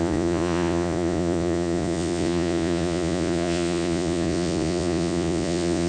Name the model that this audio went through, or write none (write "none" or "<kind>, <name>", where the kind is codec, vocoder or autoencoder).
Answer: vocoder, Vocos